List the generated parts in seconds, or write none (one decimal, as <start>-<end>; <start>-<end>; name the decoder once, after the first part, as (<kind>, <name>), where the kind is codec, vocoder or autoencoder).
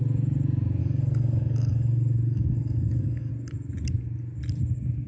0.8-3.3 (codec, DAC)